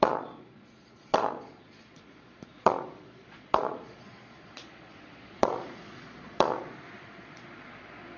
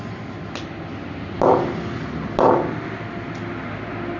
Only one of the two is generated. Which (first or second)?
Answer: first